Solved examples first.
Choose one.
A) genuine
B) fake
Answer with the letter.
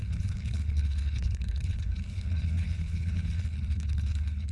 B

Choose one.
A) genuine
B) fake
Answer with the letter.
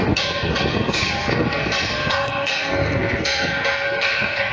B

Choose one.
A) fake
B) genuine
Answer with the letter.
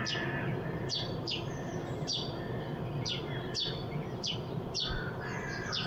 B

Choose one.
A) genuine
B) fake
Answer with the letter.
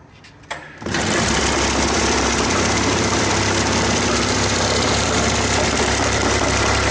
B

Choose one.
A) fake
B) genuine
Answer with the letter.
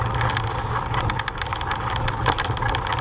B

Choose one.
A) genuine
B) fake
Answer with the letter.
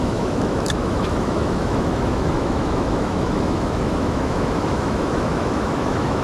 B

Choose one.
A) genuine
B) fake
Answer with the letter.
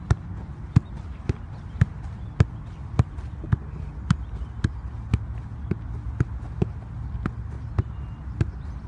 A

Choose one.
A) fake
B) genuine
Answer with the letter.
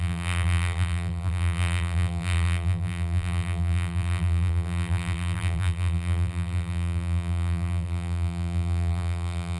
A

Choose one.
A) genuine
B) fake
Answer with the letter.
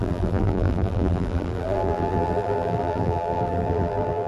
B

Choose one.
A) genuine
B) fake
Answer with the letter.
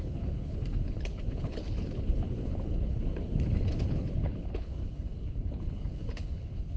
B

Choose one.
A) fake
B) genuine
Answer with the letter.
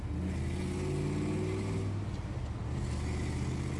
B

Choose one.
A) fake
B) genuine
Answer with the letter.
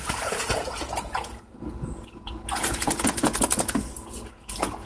A